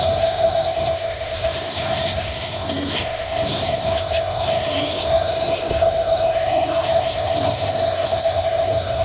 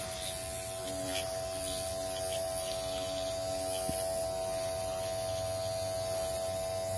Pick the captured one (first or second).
second